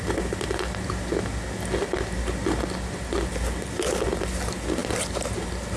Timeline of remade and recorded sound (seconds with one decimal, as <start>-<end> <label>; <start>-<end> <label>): 0.0-5.8 recorded

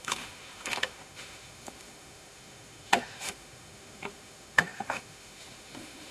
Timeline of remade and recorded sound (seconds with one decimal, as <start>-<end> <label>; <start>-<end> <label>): 0.0-6.1 remade

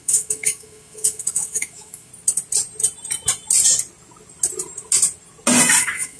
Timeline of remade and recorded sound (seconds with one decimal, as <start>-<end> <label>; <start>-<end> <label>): 0.0-2.1 remade; 2.1-5.8 recorded; 5.8-6.2 remade

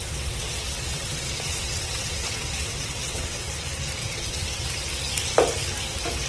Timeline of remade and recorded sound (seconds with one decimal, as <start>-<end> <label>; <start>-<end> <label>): 0.0-3.5 remade; 3.5-4.0 recorded; 4.0-4.7 remade; 4.7-6.3 recorded

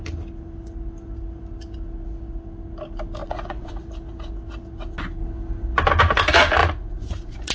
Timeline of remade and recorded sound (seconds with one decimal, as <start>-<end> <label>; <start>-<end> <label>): 0.0-3.2 recorded; 3.2-3.8 remade; 3.8-6.6 recorded; 6.6-7.5 remade

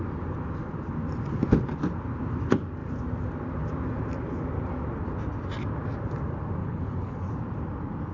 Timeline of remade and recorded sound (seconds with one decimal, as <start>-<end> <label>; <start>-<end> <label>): 0.0-6.6 recorded; 6.6-7.3 remade; 7.3-8.1 recorded

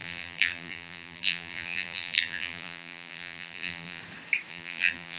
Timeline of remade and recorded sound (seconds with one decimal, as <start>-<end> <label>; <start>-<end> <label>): 0.0-4.0 remade; 4.0-4.5 recorded; 4.5-5.2 remade

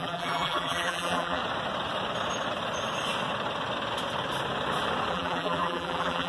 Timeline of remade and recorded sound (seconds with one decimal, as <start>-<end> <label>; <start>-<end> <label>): 0.0-1.4 remade; 1.4-5.1 recorded; 5.1-6.3 remade